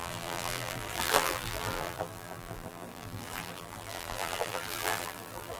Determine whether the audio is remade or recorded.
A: remade